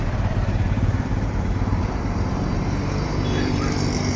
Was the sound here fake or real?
fake